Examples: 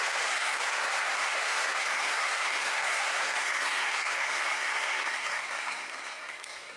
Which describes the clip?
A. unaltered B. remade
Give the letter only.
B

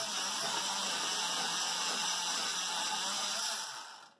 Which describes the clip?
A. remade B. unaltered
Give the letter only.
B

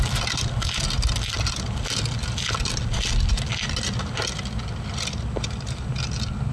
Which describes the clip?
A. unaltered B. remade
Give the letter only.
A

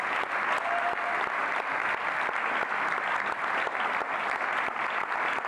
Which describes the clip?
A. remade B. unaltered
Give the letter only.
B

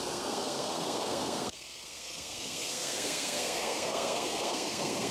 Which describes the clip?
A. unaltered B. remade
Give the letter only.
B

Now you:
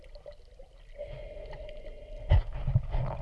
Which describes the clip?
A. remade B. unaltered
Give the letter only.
B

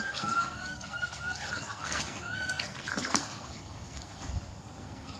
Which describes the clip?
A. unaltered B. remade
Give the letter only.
B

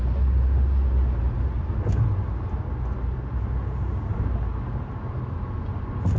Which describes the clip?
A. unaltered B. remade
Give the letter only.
A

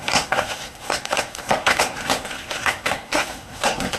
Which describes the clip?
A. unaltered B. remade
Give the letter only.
B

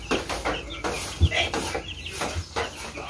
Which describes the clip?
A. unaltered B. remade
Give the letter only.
A